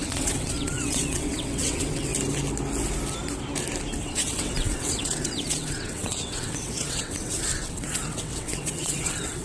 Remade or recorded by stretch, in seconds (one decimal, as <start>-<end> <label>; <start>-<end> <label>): 0.0-2.1 remade; 2.1-4.0 recorded; 4.0-9.4 remade

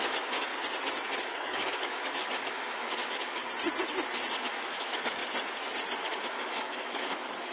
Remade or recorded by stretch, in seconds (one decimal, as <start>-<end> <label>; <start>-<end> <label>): 0.0-0.5 remade; 0.5-1.3 recorded; 1.3-3.4 remade; 3.4-4.4 recorded; 4.4-5.2 remade; 5.2-6.0 recorded; 6.0-7.5 remade

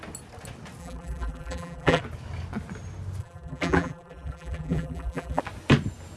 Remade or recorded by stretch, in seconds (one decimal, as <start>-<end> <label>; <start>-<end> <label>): 0.0-0.8 recorded; 0.8-2.0 remade; 2.0-3.2 recorded; 3.2-5.4 remade; 5.4-6.2 recorded

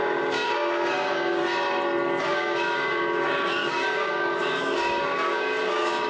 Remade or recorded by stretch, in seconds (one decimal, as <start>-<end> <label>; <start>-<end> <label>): 0.0-1.4 remade; 1.4-2.2 recorded; 2.2-6.1 remade

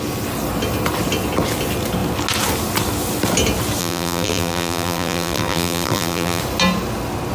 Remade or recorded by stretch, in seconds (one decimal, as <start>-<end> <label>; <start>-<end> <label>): 0.0-3.8 recorded; 3.8-6.4 remade; 6.4-7.3 recorded

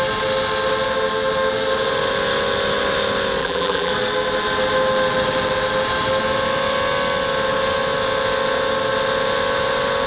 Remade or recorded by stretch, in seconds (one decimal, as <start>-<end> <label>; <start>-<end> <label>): 0.0-3.4 recorded; 3.4-3.9 remade; 3.9-10.1 recorded

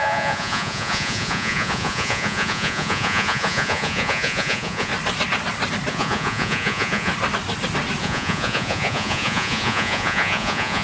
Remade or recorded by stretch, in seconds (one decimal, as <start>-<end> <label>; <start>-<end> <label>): 0.0-4.9 remade; 4.9-5.9 recorded; 5.9-7.1 remade; 7.1-8.0 recorded; 8.0-10.8 remade